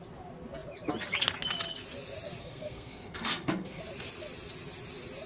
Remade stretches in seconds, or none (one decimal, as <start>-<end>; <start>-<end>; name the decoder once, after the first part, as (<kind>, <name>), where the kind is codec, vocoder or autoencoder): 2.4-3.8 (codec, SNAC)